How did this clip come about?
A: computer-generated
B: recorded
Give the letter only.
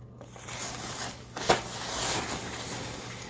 A